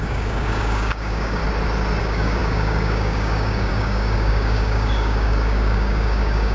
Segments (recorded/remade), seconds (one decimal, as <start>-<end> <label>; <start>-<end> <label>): 0.0-1.4 remade; 1.4-2.0 recorded; 2.0-6.5 remade